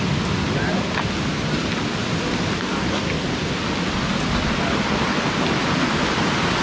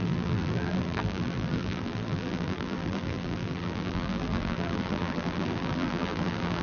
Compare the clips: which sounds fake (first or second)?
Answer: second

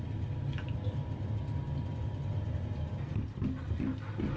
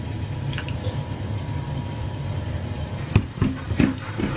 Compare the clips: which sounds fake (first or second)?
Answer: second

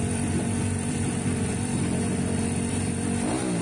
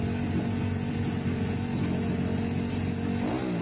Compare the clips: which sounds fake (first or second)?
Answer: first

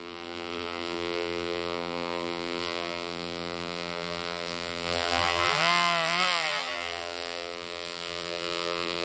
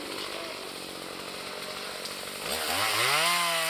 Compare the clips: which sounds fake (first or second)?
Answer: first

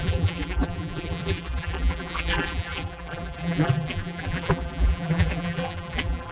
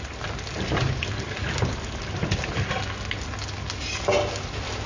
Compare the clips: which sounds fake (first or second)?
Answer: first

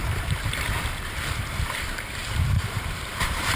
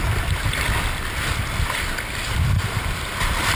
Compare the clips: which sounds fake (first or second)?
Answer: first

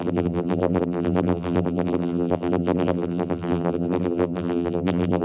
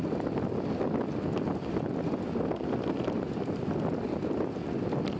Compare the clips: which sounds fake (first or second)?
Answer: first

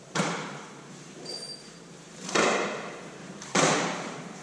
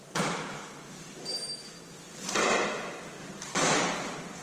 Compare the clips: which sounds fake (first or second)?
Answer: first